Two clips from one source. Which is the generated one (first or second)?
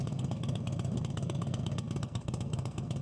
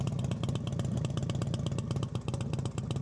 first